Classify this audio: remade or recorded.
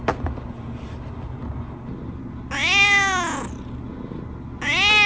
recorded